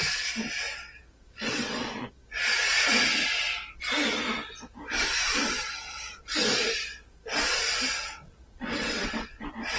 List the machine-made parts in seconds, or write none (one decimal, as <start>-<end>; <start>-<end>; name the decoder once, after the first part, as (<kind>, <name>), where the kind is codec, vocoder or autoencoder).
1.2-2.2 (vocoder, WaveNeXt); 5.6-6.2; 8.0-9.8